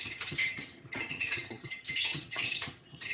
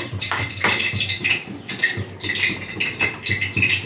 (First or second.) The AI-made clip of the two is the first